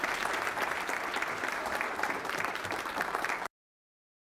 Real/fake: fake